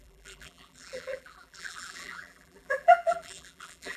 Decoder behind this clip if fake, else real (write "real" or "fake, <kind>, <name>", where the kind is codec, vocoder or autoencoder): fake, vocoder, BigVGAN v2